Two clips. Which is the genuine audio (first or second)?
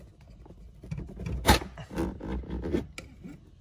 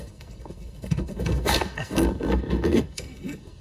first